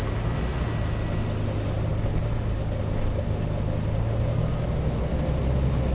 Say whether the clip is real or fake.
real